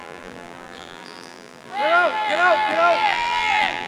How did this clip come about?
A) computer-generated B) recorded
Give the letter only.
A